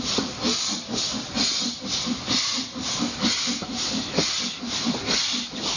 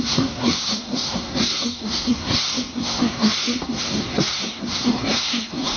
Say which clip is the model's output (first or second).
second